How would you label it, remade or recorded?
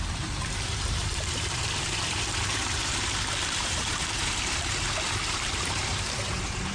remade